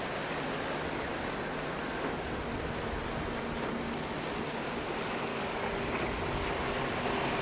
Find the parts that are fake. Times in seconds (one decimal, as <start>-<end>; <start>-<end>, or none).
5.3-5.8